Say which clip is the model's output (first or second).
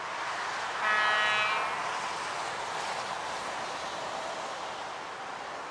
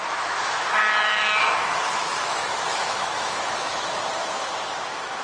second